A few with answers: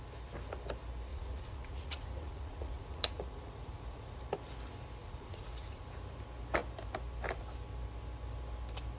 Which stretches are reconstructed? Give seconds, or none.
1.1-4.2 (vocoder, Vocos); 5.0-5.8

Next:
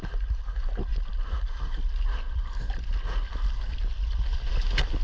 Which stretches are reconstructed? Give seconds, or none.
none

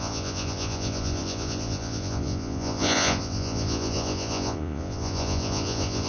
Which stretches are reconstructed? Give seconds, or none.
0.0-6.1 (vocoder, Vocos)

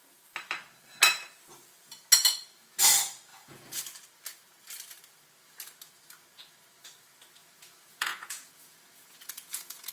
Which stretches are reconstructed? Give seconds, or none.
3.3-3.8 (vocoder, Vocos); 7.4-9.9

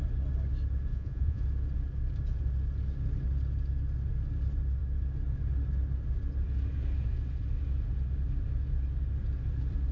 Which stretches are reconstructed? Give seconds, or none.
0.9-1.4 (vocoder, Vocos)

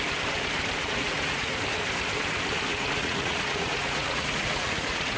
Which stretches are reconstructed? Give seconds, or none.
0.8-1.5 (vocoder, Vocos); 2.7-5.2

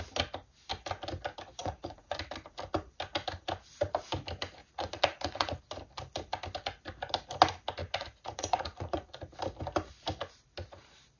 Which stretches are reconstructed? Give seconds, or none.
1.6-2.3 (vocoder, Vocos); 4.6-5.6; 7.8-9.2

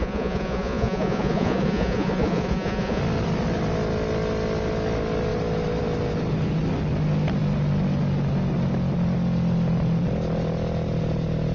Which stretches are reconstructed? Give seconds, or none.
0.0-3.0 (vocoder, Vocos)